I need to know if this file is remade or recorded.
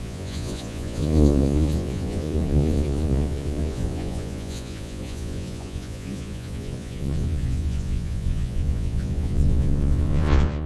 remade